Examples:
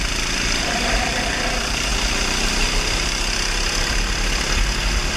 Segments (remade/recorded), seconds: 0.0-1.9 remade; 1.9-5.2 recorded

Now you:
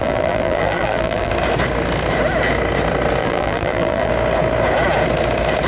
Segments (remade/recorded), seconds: 0.0-1.3 remade; 1.3-3.2 recorded; 3.2-4.1 remade; 4.1-5.7 recorded